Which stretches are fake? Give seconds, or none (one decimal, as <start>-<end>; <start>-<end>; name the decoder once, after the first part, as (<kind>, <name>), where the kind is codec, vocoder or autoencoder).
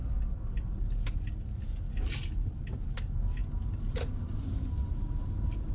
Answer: 3.4-5.7 (vocoder, BigVGAN v2)